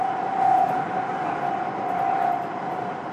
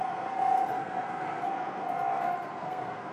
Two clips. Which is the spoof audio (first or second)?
second